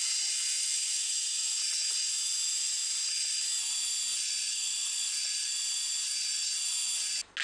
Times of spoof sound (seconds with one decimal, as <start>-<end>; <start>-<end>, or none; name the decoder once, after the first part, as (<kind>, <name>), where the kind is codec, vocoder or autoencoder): 0.7-1.6 (vocoder, Vocos); 4.1-5.1